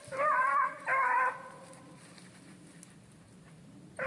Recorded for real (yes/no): yes